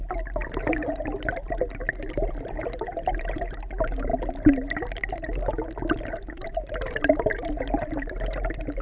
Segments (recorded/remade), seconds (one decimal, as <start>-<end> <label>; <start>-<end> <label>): 0.0-8.8 recorded